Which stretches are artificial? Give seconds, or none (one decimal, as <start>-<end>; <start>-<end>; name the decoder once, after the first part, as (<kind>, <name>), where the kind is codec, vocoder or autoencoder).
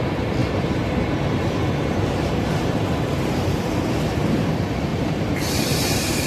0.4-3.8 (vocoder, BigVGAN v2); 4.9-6.3